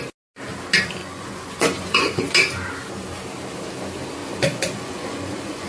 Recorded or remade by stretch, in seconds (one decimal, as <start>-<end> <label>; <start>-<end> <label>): 0.0-1.0 recorded; 1.0-2.3 remade; 2.3-4.2 recorded; 4.2-5.7 remade